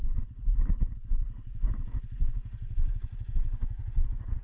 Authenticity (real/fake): real